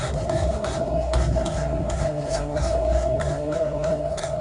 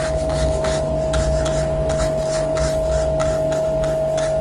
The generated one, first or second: first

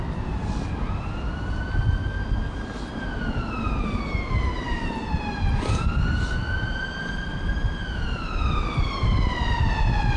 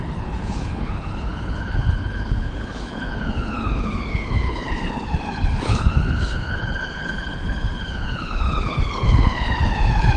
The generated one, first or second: second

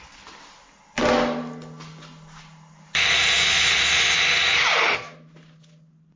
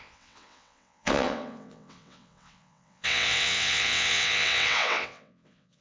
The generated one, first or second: second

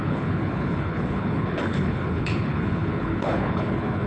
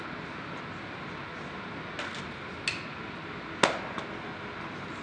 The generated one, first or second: first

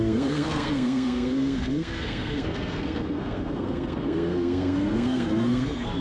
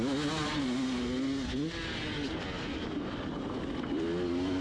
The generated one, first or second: first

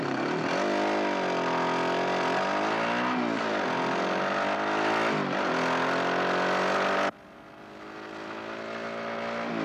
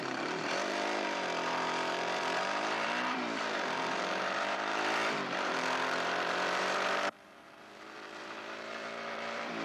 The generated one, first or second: second